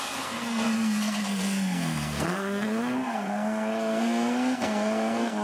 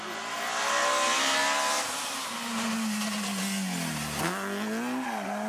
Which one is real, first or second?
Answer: second